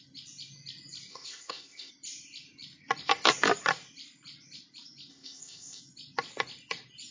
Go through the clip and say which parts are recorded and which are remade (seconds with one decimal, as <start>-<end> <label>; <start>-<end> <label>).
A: 0.0-1.1 recorded; 1.1-1.9 remade; 1.9-5.1 recorded; 5.1-5.8 remade; 5.8-7.1 recorded